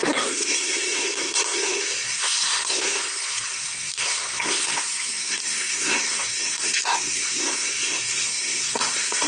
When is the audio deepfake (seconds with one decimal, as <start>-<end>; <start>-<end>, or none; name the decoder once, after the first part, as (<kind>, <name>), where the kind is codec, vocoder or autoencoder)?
0.0-9.3 (codec, SNAC)

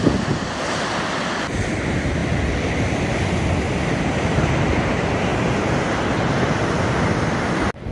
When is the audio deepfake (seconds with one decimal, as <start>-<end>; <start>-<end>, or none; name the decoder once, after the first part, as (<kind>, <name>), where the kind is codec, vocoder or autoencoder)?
none